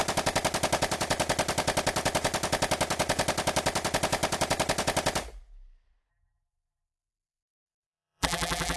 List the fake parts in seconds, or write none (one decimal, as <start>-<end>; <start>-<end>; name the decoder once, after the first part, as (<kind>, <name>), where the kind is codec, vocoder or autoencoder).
6.1-8.8 (vocoder, BigVGAN v2)